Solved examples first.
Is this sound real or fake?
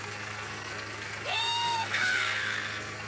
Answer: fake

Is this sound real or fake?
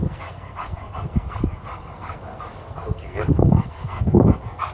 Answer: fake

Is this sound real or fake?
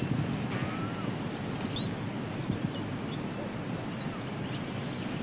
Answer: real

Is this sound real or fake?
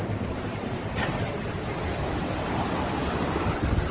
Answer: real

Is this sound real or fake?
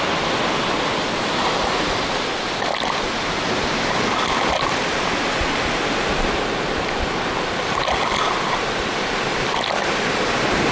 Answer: real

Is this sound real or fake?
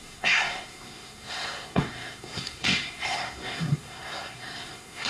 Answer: fake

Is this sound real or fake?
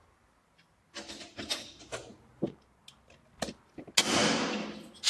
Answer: real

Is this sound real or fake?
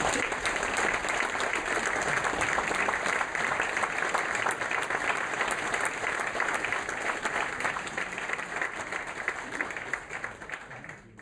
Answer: fake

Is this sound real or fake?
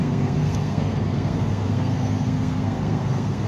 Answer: fake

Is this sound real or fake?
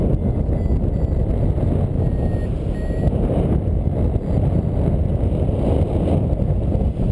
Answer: real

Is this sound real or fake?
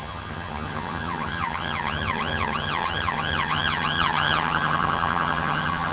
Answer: fake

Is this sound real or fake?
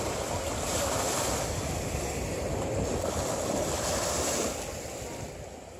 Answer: real